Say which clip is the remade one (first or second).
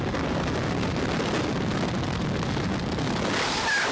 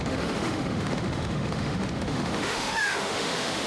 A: second